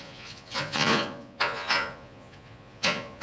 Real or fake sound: fake